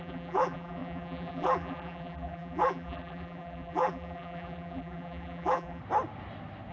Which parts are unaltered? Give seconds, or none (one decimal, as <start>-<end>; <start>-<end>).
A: 5.8-6.7